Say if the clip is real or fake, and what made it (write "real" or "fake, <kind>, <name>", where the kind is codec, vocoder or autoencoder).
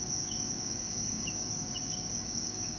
fake, codec, DAC